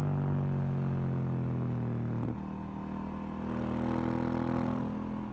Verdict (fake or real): real